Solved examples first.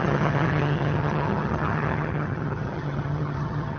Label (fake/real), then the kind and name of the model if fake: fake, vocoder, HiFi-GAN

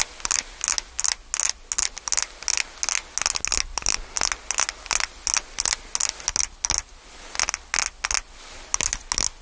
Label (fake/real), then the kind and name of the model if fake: real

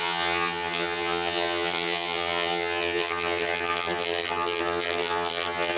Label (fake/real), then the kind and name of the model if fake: fake, vocoder, HiFi-GAN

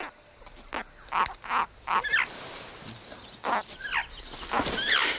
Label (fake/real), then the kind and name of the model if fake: real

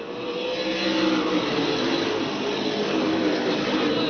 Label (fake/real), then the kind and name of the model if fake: real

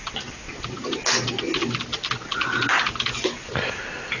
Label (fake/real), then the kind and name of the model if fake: real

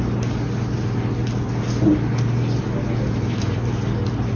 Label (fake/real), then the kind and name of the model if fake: real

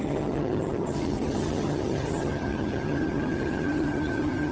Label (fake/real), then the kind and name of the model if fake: fake, vocoder, HiFi-GAN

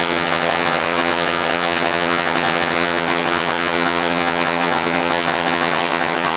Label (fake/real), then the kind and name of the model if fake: fake, vocoder, HiFi-GAN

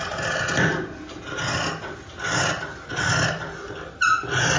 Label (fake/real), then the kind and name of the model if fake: real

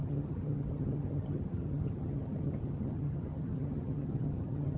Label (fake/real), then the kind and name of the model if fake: fake, vocoder, HiFi-GAN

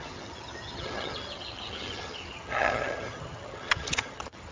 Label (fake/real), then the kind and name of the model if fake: fake, vocoder, HiFi-GAN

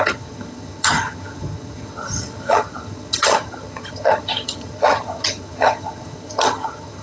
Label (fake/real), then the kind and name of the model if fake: fake, vocoder, HiFi-GAN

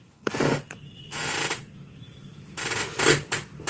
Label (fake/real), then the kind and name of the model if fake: real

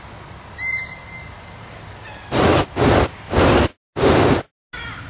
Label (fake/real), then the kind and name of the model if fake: real